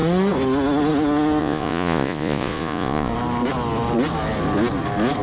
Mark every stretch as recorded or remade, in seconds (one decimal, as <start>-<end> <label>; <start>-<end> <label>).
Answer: 0.0-1.4 recorded; 1.4-3.1 remade; 3.1-5.2 recorded